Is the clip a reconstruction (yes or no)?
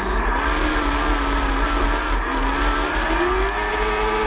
no